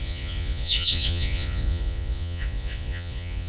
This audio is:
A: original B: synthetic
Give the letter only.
B